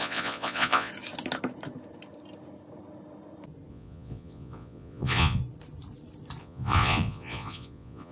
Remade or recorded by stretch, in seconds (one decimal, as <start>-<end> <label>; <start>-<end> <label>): 0.0-0.9 remade; 0.9-3.7 recorded; 3.7-5.4 remade; 5.4-6.4 recorded; 6.4-8.1 remade